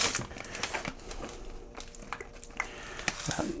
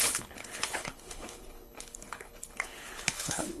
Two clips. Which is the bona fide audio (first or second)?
first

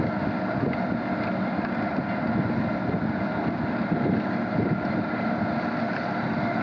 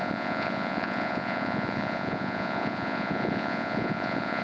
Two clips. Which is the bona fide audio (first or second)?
first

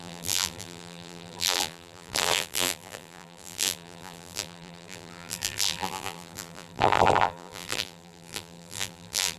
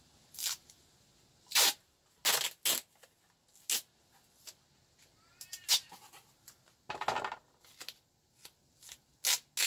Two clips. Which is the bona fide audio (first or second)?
second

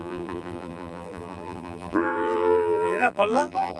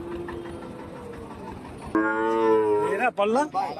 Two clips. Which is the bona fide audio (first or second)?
second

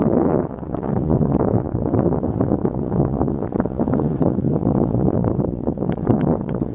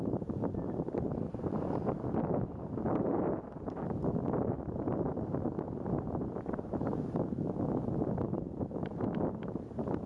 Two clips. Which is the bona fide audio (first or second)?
second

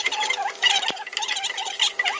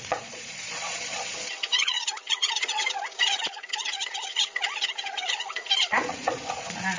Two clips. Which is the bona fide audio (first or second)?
first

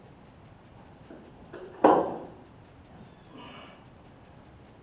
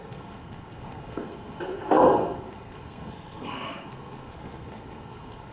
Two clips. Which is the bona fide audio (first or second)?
first